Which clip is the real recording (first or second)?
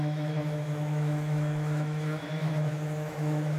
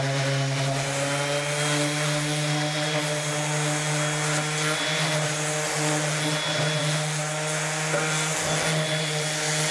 second